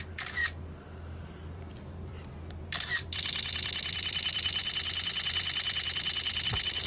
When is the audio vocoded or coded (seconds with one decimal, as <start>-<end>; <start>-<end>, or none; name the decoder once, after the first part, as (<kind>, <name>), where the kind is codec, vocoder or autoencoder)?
0.0-0.4 (vocoder, BigVGAN v2); 1.2-6.9